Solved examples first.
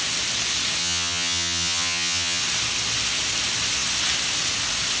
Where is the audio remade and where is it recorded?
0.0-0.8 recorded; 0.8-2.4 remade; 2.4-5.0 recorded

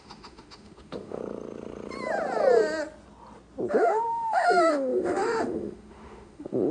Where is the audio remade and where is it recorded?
0.0-1.2 remade; 1.2-3.7 recorded; 3.7-6.7 remade

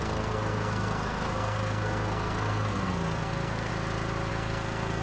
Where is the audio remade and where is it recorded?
0.0-3.7 remade; 3.7-4.3 recorded; 4.3-5.0 remade

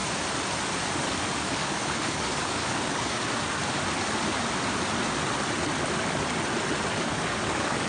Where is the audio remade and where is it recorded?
0.0-1.0 recorded; 1.0-3.6 remade; 3.6-6.9 recorded; 6.9-7.9 remade

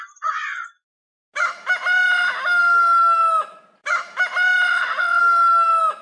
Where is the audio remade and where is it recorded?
0.0-4.7 recorded; 4.7-5.2 remade; 5.2-6.0 recorded

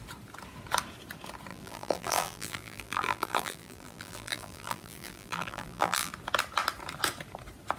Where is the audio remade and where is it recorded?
0.0-1.5 recorded; 1.5-6.1 remade; 6.1-7.8 recorded